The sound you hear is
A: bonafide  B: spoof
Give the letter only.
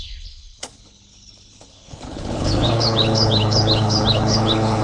B